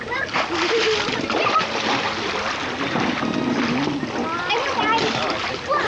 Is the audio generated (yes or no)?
no